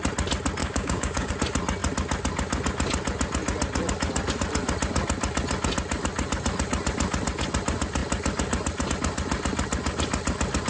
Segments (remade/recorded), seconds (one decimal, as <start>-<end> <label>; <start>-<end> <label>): 0.0-0.6 recorded; 0.6-1.3 remade; 1.3-10.7 recorded